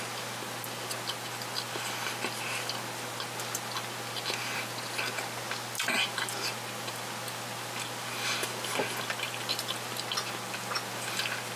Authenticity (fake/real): real